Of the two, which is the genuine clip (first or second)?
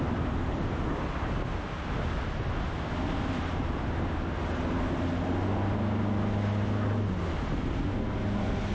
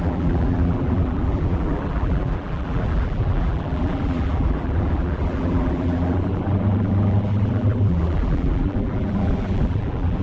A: first